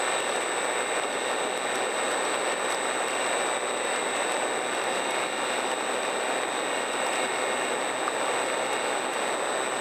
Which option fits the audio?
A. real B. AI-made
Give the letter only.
A